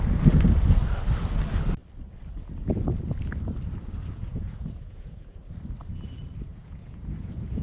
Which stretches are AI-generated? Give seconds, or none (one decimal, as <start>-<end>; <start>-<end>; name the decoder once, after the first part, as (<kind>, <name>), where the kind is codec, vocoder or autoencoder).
4.3-5.4 (vocoder, Vocos); 6.5-7.6